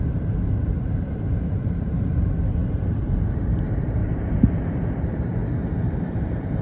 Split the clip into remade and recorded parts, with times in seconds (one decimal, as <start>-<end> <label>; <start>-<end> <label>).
0.0-5.4 remade; 5.4-6.0 recorded; 6.0-6.6 remade